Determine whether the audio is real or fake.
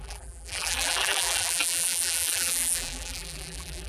fake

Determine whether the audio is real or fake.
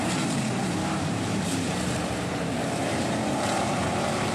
fake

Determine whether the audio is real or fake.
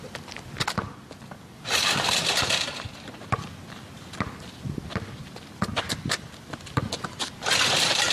fake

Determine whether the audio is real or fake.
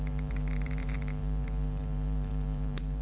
fake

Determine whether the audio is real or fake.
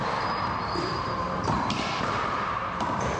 fake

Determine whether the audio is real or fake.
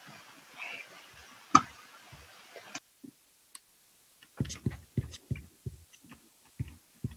real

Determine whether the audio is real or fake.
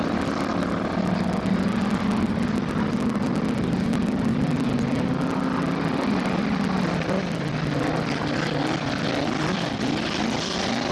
fake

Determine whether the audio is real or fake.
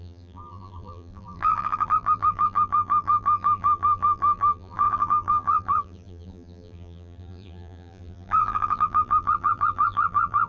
fake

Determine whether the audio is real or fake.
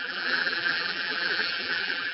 fake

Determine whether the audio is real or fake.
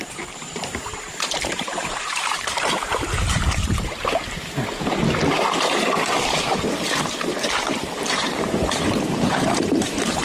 fake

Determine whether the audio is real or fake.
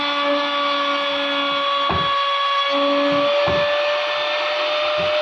real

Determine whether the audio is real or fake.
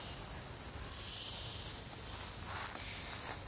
real